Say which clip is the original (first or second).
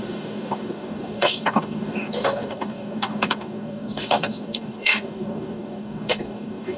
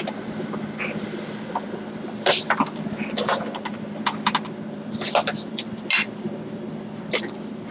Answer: second